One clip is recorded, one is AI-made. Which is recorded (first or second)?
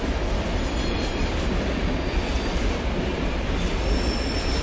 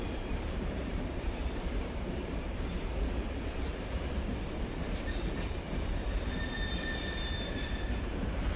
first